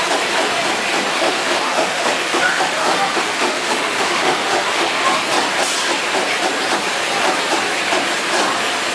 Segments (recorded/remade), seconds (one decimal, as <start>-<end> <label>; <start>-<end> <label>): 0.0-1.2 recorded; 1.2-5.1 remade; 5.1-8.9 recorded